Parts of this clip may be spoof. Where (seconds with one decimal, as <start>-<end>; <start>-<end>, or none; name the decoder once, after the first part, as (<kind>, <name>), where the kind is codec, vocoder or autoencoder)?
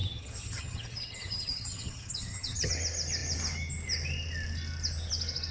0.0-2.7 (vocoder, HiFi-GAN)